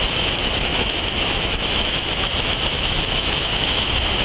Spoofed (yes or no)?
yes